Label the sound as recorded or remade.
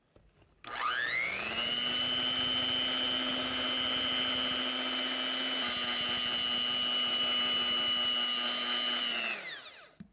recorded